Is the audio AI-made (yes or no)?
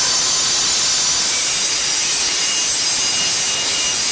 no